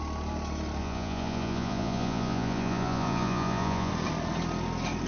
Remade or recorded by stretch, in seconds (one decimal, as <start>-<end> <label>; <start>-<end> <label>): 0.0-0.8 recorded; 0.8-3.9 remade; 3.9-5.1 recorded